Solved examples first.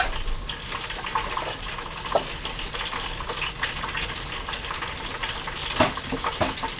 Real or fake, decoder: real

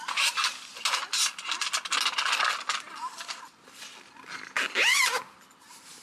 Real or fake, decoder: real